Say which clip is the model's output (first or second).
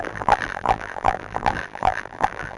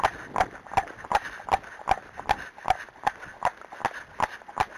first